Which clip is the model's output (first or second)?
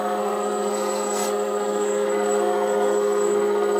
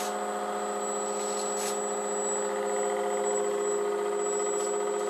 first